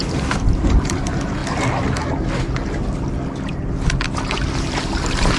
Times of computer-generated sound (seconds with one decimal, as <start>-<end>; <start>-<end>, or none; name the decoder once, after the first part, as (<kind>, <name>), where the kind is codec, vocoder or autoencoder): 0.0-1.4 (vocoder, BigVGAN v2); 4.6-5.4